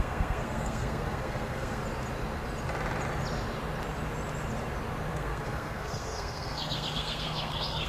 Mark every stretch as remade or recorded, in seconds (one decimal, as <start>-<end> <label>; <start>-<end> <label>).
0.0-1.8 remade; 1.8-5.1 recorded; 5.1-7.9 remade